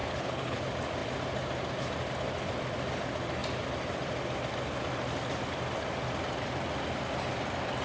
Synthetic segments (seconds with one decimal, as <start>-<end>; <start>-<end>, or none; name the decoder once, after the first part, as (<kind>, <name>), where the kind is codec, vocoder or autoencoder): 0.0-0.6 (codec, HILCodec)